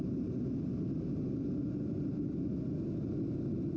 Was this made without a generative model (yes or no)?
yes